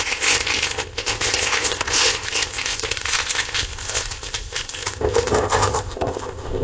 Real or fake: fake